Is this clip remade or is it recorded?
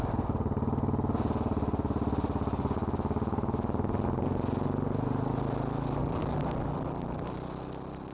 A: recorded